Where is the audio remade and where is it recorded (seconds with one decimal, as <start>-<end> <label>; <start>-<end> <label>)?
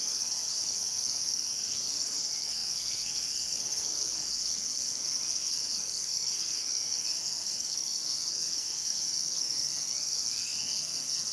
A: 0.0-11.3 remade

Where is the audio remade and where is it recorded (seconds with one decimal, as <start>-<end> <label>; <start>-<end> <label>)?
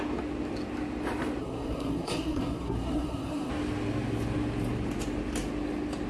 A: 0.0-1.4 recorded; 1.4-3.5 remade; 3.5-6.1 recorded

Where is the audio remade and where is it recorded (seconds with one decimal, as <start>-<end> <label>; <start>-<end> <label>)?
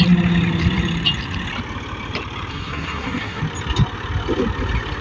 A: 0.0-2.5 recorded; 2.5-3.4 remade; 3.4-5.0 recorded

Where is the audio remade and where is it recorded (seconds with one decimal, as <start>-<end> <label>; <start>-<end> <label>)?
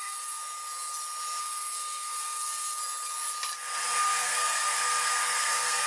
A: 0.0-0.4 remade; 0.4-1.4 recorded; 1.4-2.8 remade; 2.8-4.0 recorded; 4.0-5.9 remade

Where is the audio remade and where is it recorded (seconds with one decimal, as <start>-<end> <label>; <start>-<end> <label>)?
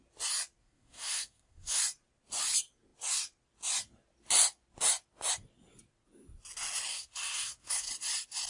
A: 0.0-0.6 recorded; 0.6-1.8 remade; 1.8-6.9 recorded; 6.9-7.9 remade; 7.9-8.5 recorded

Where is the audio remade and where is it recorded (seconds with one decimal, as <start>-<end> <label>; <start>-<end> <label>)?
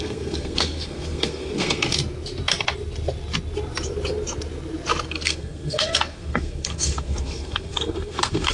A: 0.0-2.0 remade; 2.0-5.1 recorded; 5.1-8.5 remade